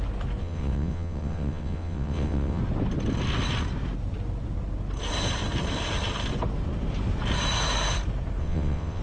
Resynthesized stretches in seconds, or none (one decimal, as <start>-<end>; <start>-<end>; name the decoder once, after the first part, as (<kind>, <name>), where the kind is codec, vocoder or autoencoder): 0.4-2.6 (vocoder, WaveNeXt); 8.4-9.0